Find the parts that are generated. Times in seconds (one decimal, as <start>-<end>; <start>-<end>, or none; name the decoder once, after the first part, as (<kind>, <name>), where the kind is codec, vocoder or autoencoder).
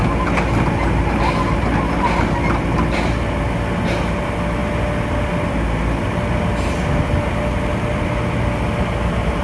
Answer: none